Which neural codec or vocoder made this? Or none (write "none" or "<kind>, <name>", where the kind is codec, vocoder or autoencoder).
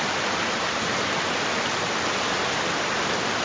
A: none